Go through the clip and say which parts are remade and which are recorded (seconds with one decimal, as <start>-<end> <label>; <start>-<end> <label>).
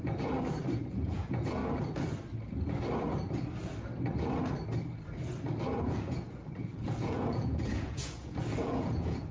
0.0-0.9 recorded; 0.9-1.6 remade; 1.6-5.8 recorded; 5.8-9.3 remade